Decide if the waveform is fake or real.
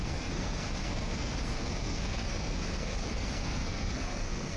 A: fake